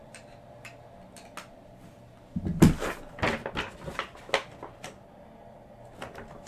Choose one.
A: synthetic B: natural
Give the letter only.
B